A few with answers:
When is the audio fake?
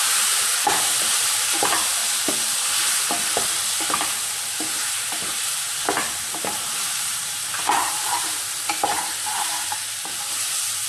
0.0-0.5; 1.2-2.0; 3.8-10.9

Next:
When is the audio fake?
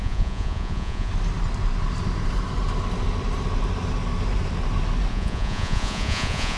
0.0-1.1; 5.1-6.6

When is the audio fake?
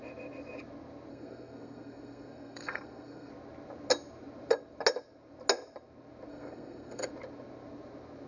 1.1-3.3; 6.3-7.1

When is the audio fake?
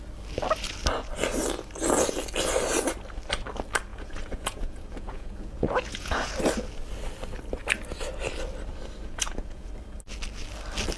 3.9-6.3; 9.0-9.7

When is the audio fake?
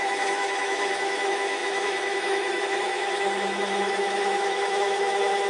0.0-5.5